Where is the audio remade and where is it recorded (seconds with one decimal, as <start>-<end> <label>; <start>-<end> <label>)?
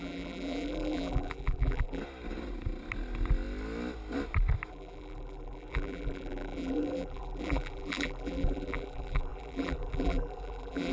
0.0-2.0 remade; 2.0-4.7 recorded; 4.7-10.9 remade